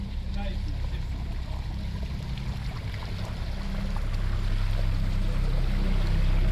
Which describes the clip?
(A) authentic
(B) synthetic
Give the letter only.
A